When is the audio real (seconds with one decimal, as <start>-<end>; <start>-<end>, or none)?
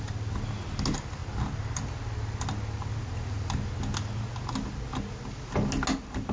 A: 0.0-6.3